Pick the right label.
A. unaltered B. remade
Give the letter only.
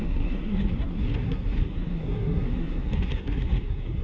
B